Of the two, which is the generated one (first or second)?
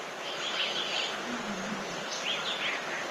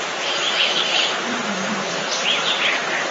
second